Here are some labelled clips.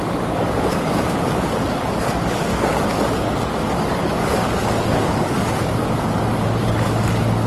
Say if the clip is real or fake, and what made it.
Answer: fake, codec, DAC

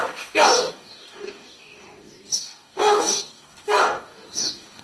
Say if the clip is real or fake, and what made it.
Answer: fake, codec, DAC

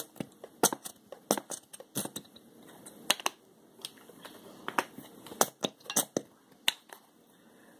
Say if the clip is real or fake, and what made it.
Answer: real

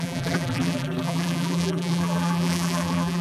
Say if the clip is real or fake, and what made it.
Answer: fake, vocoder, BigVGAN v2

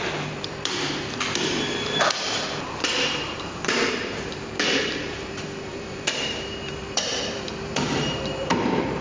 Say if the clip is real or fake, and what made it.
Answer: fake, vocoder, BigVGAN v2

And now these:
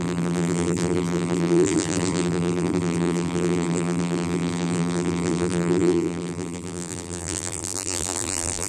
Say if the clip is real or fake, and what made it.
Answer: fake, vocoder, BigVGAN v2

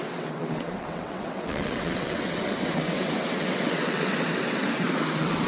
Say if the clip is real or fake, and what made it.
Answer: fake, vocoder, WaveNeXt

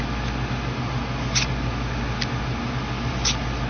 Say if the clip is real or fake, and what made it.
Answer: real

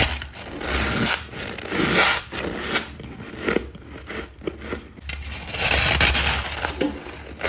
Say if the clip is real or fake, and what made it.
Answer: real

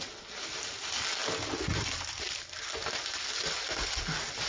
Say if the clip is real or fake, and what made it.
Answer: real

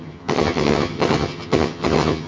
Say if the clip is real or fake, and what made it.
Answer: fake, vocoder, HiFi-GAN